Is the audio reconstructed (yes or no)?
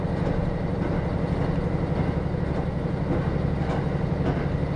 no